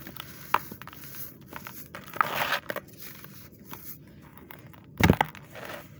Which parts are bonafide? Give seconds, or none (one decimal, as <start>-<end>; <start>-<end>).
0.0-4.3; 4.8-6.0